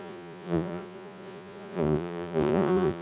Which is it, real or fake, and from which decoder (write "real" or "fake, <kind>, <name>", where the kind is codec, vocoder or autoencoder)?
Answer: fake, vocoder, Vocos